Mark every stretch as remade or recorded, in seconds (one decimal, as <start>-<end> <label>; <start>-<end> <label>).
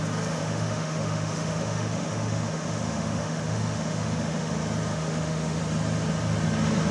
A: 0.0-0.4 recorded; 0.4-4.5 remade; 4.5-4.9 recorded; 4.9-5.6 remade; 5.6-6.9 recorded